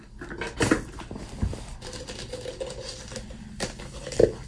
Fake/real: real